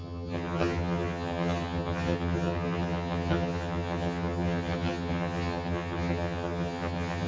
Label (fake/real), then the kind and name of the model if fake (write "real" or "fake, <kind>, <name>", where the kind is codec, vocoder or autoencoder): fake, vocoder, HiFi-GAN